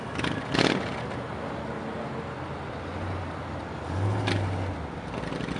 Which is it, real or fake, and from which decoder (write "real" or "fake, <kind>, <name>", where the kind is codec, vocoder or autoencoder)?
real